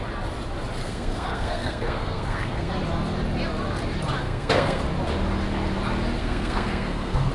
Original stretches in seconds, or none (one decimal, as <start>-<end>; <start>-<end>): 0.0-0.8; 2.7-4.2; 4.8-6.2